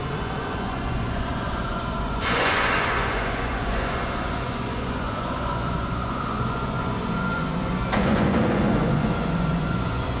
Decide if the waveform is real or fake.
fake